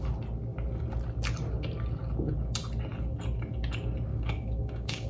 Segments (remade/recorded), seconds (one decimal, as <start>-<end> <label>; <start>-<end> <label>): 0.0-4.1 recorded; 4.1-5.1 remade